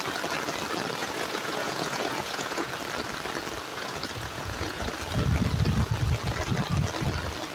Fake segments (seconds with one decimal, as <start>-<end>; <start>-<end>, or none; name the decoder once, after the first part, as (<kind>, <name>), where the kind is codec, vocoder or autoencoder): 1.0-2.7 (vocoder, Vocos); 3.7-4.9